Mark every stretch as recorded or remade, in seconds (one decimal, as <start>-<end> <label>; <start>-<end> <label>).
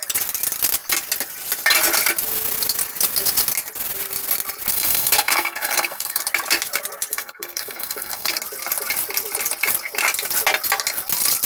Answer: 0.0-4.7 recorded; 4.7-6.2 remade; 6.2-7.1 recorded; 7.1-8.4 remade; 8.4-11.5 recorded